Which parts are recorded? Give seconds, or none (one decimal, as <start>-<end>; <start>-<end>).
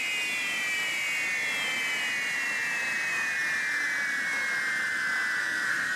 0.0-5.4